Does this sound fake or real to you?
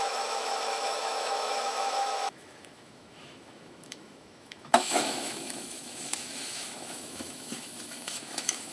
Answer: fake